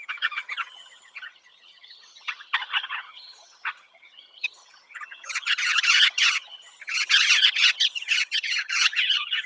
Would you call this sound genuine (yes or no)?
no